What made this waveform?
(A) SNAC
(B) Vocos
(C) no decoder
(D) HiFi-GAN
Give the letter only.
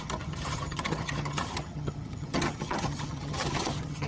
D